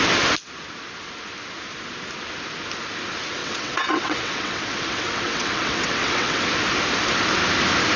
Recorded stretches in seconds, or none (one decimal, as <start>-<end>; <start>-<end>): 0.0-3.4; 6.4-8.0